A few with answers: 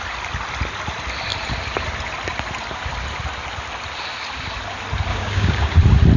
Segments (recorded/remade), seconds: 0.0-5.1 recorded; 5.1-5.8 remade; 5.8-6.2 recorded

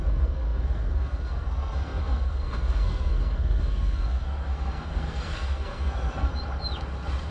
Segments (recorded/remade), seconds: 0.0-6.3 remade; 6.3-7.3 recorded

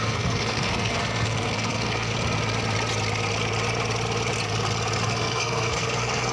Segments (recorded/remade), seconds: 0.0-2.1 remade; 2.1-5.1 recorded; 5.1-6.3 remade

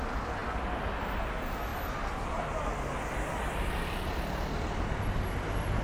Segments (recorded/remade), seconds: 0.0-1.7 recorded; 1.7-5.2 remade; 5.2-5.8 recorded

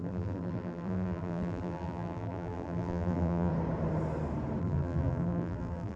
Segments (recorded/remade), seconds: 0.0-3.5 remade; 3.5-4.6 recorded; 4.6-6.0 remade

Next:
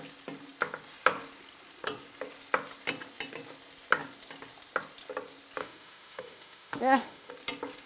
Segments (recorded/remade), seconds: 0.0-5.6 recorded; 5.6-7.3 remade; 7.3-7.9 recorded

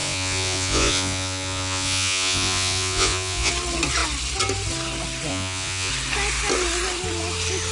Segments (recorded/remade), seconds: 0.0-3.5 remade; 3.5-5.3 recorded; 5.3-5.9 remade; 5.9-7.7 recorded